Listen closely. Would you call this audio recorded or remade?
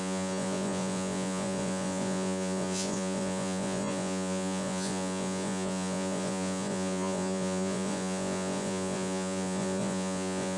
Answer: remade